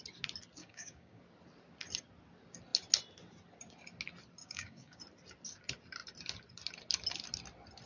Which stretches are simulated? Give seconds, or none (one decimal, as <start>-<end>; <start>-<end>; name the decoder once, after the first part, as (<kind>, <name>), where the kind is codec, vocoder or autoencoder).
0.6-1.2 (codec, DAC); 4.4-5.0